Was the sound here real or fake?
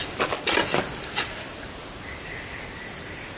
real